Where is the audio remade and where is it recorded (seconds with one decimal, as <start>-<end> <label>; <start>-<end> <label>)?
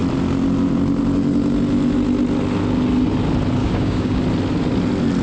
0.0-3.6 recorded; 3.6-4.2 remade; 4.2-5.2 recorded